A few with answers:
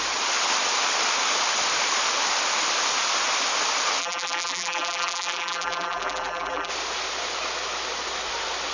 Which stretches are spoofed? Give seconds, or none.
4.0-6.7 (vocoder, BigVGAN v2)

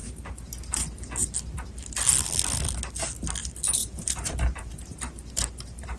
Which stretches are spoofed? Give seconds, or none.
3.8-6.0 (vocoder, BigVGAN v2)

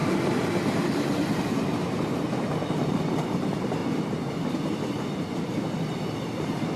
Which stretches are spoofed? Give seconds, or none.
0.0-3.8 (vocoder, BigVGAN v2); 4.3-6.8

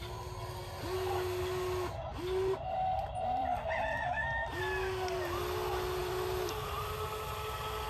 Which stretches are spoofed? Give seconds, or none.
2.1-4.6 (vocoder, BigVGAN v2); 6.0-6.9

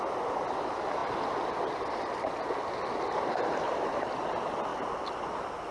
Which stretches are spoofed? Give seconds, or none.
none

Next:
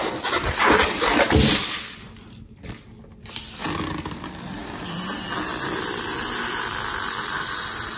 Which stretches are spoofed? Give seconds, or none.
3.6-4.3 (vocoder, BigVGAN v2)

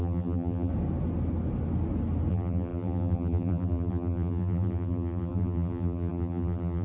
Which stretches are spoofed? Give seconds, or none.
0.0-0.7 (vocoder, BigVGAN v2); 2.3-6.8